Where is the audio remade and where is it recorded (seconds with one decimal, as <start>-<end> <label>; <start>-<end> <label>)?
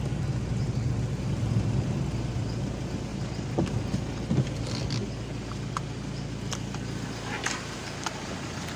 0.0-8.8 recorded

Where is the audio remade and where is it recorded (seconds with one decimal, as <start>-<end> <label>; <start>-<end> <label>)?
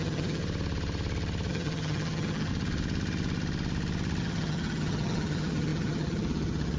0.0-0.4 remade; 0.4-1.5 recorded; 1.5-2.5 remade; 2.5-4.2 recorded; 4.2-6.8 remade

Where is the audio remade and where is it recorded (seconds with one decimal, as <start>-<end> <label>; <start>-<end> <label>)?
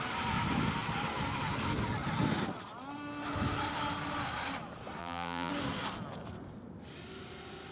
0.0-5.0 recorded; 5.0-5.5 remade; 5.5-7.7 recorded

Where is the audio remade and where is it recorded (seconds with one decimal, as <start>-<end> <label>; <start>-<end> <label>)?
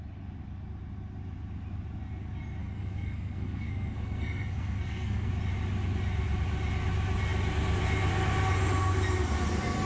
0.0-2.6 recorded; 2.6-5.3 remade; 5.3-9.9 recorded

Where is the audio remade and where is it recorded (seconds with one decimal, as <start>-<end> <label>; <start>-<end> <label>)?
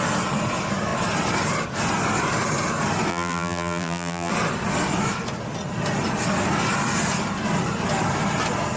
0.0-3.1 recorded; 3.1-4.3 remade; 4.3-8.8 recorded